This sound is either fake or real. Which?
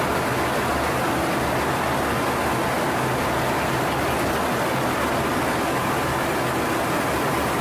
real